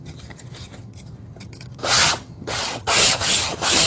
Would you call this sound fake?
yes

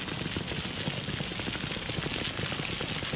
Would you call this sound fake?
no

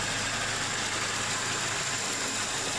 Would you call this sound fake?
no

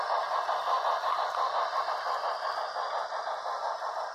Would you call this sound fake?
no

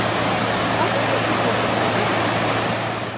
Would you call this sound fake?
no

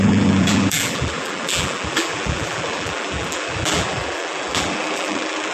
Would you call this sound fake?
yes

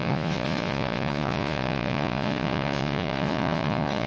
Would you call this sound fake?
yes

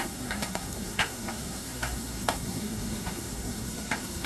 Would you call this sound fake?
yes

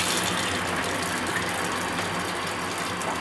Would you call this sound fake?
no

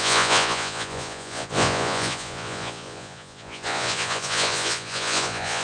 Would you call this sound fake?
yes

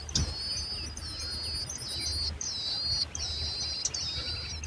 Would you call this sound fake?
no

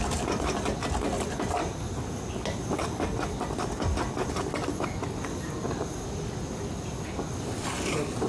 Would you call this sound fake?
no